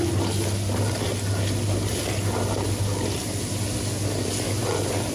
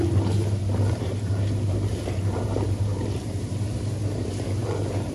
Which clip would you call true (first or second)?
first